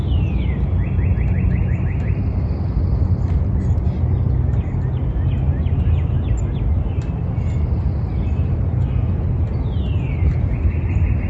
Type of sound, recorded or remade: recorded